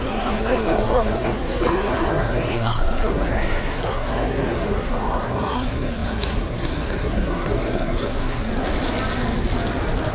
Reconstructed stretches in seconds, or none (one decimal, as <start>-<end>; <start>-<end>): 0.0-8.5